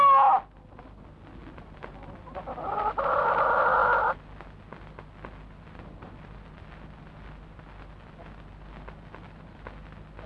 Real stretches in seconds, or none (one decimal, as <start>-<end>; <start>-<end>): 0.0-1.4; 2.8-10.3